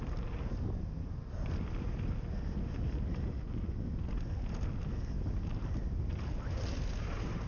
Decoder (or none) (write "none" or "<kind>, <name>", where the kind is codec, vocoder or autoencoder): none